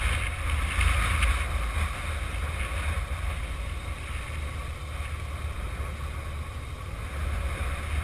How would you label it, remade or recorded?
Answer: recorded